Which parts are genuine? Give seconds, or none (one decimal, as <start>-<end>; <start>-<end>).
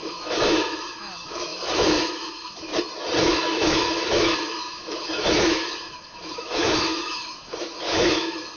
2.7-3.2